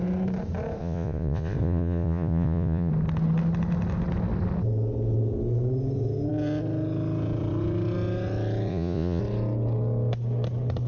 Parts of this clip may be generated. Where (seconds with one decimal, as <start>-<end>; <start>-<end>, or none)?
0.8-2.9; 8.7-9.2